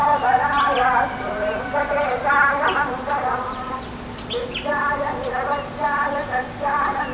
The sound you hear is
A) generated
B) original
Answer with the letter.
B